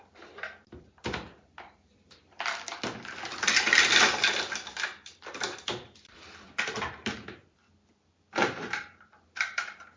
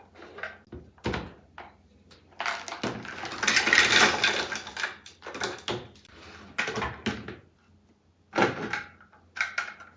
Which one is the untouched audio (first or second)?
second